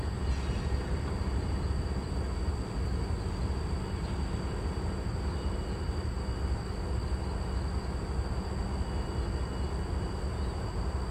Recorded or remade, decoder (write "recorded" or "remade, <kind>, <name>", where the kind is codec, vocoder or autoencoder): recorded